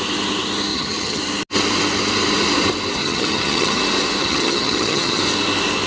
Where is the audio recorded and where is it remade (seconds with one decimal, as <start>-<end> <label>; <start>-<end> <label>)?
0.0-0.7 recorded; 0.7-1.2 remade; 1.2-3.0 recorded; 3.0-3.8 remade; 3.8-4.2 recorded; 4.2-5.2 remade; 5.2-5.9 recorded